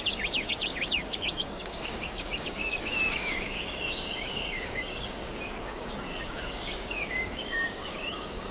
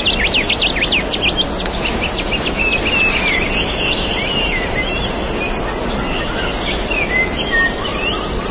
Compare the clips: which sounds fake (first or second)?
first